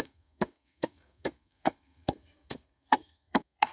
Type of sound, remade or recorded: remade